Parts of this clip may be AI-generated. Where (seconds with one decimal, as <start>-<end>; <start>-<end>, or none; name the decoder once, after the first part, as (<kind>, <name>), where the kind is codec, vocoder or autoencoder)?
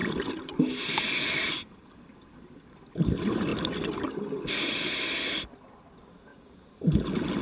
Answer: none